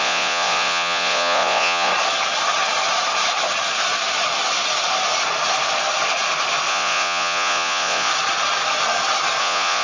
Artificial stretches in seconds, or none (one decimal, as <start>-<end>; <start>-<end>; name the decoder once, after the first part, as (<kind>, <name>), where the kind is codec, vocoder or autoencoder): 0.0-1.9 (vocoder, Vocos); 6.7-8.1; 9.4-9.8